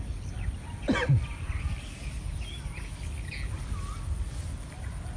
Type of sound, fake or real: real